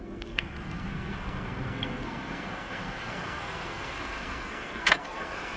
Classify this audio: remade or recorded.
remade